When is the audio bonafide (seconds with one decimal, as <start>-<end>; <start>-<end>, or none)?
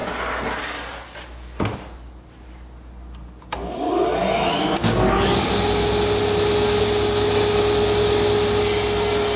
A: 0.0-9.4